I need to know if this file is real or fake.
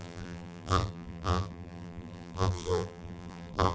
fake